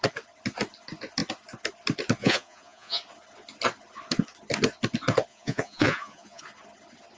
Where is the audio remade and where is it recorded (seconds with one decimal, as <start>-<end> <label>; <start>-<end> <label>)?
0.0-2.2 recorded; 2.2-3.0 remade; 3.0-5.3 recorded; 5.3-6.4 remade; 6.4-7.2 recorded